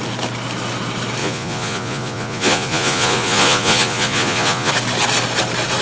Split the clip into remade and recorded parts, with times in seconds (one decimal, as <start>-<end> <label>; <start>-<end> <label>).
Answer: 0.0-1.2 recorded; 1.2-4.7 remade; 4.7-5.8 recorded